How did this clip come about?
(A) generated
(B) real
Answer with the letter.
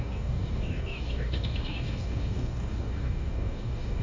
A